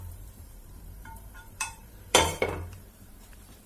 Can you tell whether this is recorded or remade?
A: remade